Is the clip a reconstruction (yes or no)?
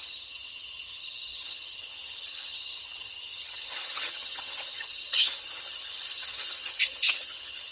yes